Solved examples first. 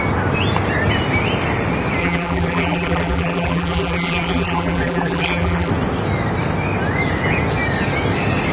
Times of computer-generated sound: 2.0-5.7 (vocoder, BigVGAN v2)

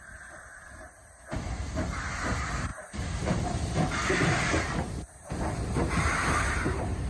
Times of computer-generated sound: 0.5-1.0 (vocoder, BigVGAN v2); 2.7-7.1

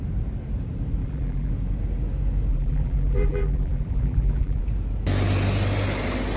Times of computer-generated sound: 1.0-1.5 (vocoder, BigVGAN v2); 2.5-4.6

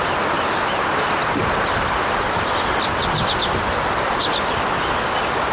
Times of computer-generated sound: 1.2-4.2 (vocoder, BigVGAN v2)